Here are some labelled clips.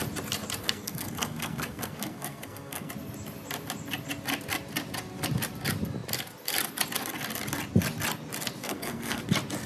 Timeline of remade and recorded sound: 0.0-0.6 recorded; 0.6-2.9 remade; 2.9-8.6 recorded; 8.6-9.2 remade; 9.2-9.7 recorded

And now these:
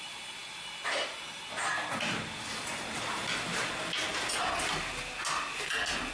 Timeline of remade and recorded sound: 0.0-6.1 recorded

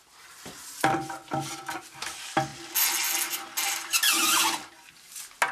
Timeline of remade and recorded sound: 0.0-5.5 recorded

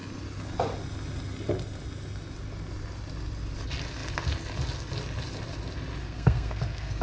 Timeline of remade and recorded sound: 0.0-6.0 recorded; 6.0-7.0 remade

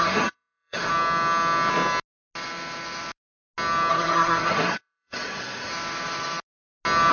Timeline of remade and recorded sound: 0.0-0.9 remade; 0.9-3.9 recorded; 3.9-5.7 remade; 5.7-7.1 recorded

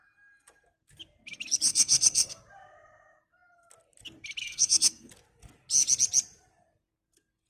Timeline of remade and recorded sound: 0.0-1.7 recorded; 1.7-2.4 remade; 2.4-4.4 recorded; 4.4-5.1 remade; 5.1-7.5 recorded

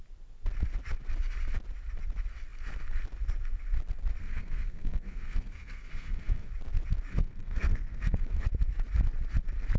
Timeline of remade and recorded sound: 0.0-4.2 recorded; 4.2-6.5 remade; 6.5-7.1 recorded; 7.1-8.4 remade; 8.4-9.8 recorded